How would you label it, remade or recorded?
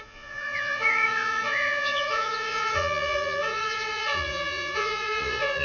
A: remade